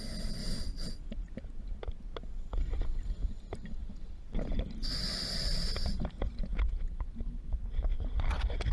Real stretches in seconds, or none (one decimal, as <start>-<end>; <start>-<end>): 0.0-8.7

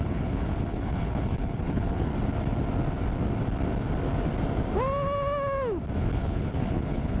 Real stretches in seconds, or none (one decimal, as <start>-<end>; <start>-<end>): 2.1-6.0

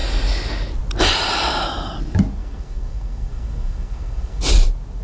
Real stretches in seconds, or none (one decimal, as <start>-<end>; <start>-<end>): 0.0-2.4; 4.4-5.0